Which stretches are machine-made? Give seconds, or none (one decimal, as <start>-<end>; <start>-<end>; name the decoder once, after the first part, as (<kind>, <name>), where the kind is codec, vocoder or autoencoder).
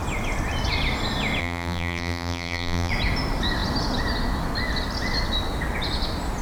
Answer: 1.4-2.9 (vocoder, BigVGAN v2)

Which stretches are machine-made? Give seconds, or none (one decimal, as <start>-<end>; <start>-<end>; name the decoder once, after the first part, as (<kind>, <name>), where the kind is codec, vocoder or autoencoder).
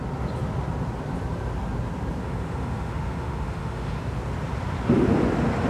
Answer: 2.2-4.0 (autoencoder, DAC-VAE)